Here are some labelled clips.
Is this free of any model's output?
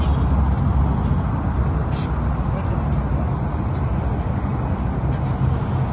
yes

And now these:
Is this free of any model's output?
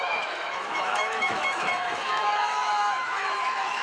no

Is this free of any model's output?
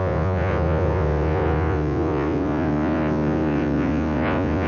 no